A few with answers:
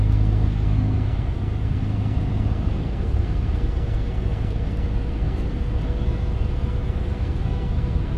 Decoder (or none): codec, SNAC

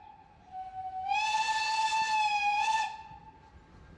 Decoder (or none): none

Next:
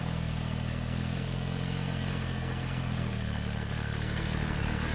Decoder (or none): codec, SNAC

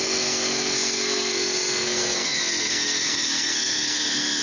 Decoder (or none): codec, SNAC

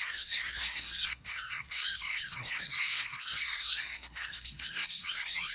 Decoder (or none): codec, SNAC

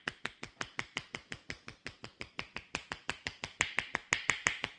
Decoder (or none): none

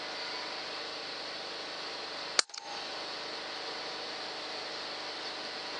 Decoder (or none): none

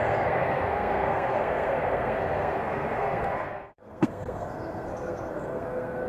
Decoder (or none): codec, SNAC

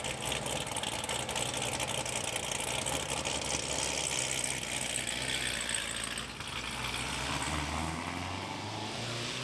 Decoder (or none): none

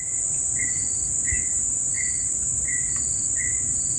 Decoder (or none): none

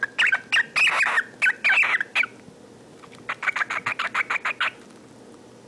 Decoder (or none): none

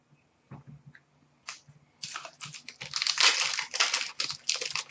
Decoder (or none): none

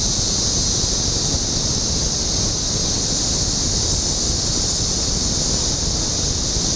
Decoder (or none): none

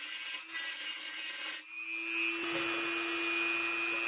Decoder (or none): none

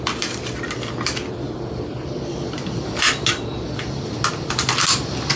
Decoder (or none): none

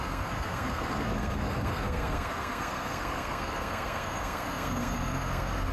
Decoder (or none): codec, SNAC